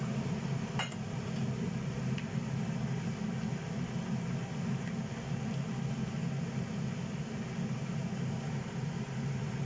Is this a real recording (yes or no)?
yes